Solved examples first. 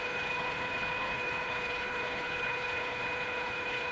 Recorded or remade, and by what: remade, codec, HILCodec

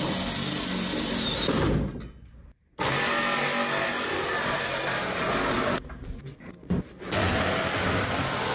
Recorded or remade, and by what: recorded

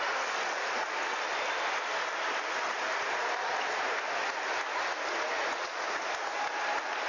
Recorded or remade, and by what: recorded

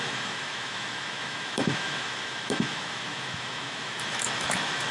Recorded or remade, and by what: remade, autoencoder, DAC-VAE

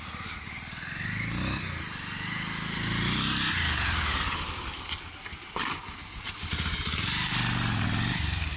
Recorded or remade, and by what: recorded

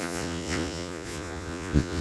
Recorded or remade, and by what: remade, vocoder, Vocos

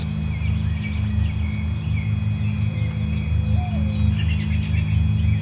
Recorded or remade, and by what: recorded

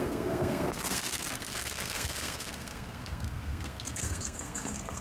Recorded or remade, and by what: remade, codec, SNAC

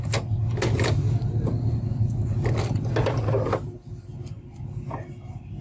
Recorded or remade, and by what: recorded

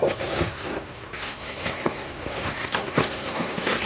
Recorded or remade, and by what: remade, codec, SNAC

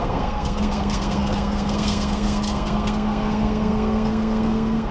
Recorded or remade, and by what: remade, codec, SNAC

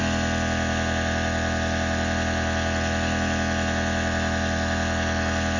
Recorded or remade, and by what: recorded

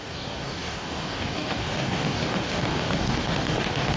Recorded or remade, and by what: remade, codec, DAC